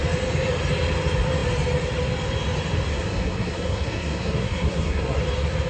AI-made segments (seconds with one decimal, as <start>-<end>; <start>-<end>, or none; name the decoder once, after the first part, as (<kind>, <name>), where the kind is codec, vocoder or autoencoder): 2.9-5.2 (codec, SNAC)